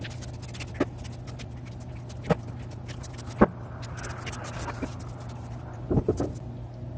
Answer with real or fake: real